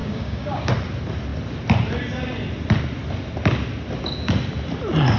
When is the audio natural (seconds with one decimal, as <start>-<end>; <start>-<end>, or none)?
0.7-5.2